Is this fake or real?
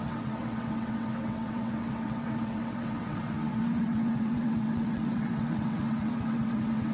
fake